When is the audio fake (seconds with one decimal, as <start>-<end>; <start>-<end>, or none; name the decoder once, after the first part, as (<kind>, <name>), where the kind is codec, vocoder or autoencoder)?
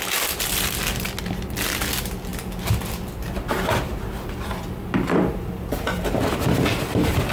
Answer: none